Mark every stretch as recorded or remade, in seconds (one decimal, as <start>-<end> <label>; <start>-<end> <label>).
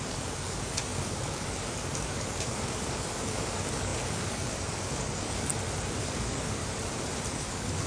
0.0-5.5 remade; 5.5-6.0 recorded; 6.0-6.6 remade; 6.6-7.3 recorded; 7.3-7.9 remade